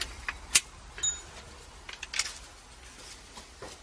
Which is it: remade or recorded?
recorded